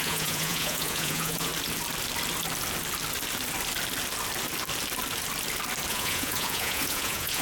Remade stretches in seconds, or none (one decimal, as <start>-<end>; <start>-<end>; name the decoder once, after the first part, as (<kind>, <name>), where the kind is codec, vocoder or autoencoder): 0.0-1.5 (vocoder, Vocos); 5.9-7.4